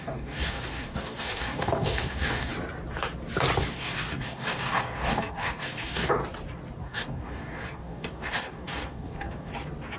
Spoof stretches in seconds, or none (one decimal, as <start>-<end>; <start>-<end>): 0.0-2.5; 3.7-6.2; 6.8-9.5